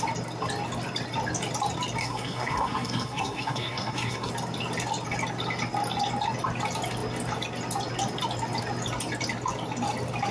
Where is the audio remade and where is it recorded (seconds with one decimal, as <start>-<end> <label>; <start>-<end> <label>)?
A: 0.0-2.0 recorded; 2.0-4.3 remade; 4.3-10.3 recorded